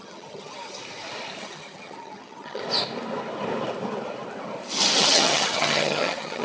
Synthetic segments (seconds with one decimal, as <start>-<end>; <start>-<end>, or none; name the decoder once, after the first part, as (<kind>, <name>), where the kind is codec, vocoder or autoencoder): 0.0-0.8 (vocoder, HiFi-GAN); 1.4-2.6; 5.0-6.4